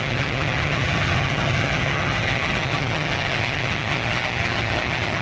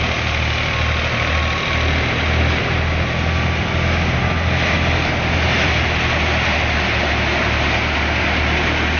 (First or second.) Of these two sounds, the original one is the second